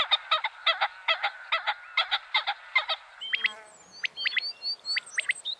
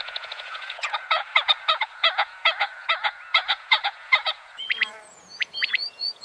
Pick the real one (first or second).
first